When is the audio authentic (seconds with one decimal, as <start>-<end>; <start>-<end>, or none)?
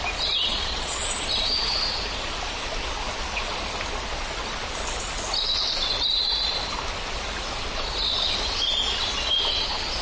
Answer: 0.0-0.4; 1.0-10.0